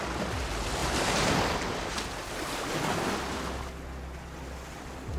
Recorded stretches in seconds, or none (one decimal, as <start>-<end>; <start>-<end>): 0.0-0.8; 1.3-5.2